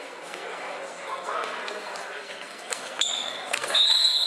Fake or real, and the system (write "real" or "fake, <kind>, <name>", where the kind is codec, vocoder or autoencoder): fake, codec, SNAC